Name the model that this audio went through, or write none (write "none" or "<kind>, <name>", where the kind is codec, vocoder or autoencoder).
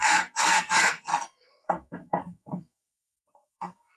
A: codec, SNAC